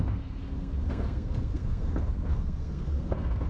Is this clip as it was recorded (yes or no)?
no